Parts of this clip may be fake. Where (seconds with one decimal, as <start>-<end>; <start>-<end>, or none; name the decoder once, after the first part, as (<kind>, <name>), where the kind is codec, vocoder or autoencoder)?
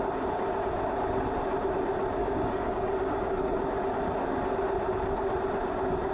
2.2-3.5 (codec, DAC)